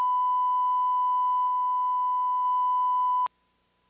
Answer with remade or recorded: recorded